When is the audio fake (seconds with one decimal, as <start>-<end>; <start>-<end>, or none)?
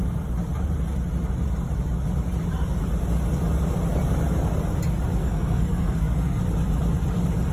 5.2-6.4